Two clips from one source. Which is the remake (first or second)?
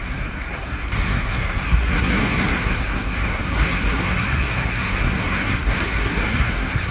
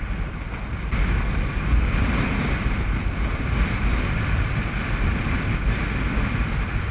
first